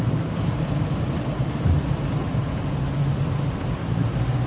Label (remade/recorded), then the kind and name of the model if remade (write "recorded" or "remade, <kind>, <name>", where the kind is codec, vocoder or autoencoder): recorded